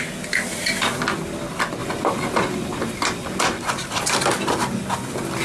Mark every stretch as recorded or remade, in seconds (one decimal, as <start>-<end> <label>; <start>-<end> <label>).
0.0-5.4 recorded

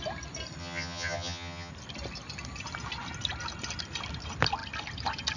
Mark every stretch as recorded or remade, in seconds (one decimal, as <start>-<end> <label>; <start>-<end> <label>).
0.0-0.6 recorded; 0.6-1.7 remade; 1.7-5.4 recorded

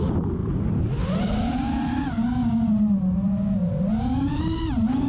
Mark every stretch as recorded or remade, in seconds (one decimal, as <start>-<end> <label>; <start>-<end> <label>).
0.0-0.4 recorded; 0.4-2.3 remade; 2.3-3.6 recorded; 3.6-5.1 remade

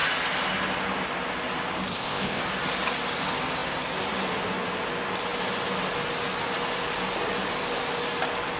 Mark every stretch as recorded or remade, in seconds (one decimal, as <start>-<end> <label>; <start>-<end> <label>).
0.0-1.9 recorded; 1.9-2.4 remade; 2.4-8.6 recorded

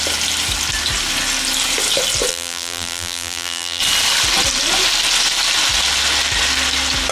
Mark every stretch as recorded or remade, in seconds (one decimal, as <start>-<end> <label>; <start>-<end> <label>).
0.0-2.3 recorded; 2.3-3.8 remade; 3.8-7.1 recorded

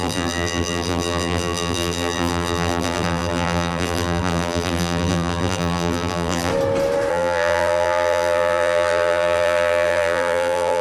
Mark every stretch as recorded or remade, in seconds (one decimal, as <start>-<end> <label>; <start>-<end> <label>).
0.0-6.5 remade; 6.5-7.1 recorded; 7.1-10.8 remade

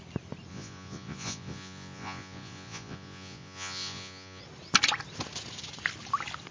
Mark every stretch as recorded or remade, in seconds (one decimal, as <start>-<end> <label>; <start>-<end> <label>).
0.0-0.5 recorded; 0.5-4.4 remade; 4.4-6.5 recorded

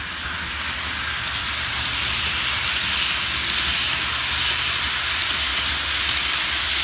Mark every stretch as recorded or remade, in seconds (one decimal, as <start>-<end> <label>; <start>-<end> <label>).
0.0-6.8 recorded